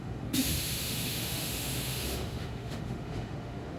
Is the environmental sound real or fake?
fake